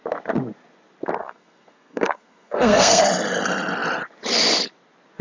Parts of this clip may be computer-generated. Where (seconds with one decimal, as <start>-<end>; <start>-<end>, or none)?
1.2-3.0